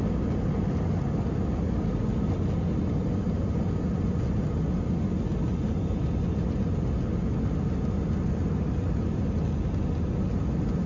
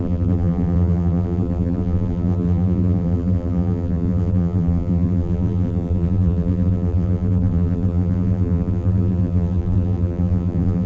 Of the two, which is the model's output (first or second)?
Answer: second